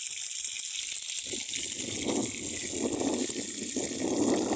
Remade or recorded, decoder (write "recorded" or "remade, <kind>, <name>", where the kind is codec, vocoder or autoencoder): recorded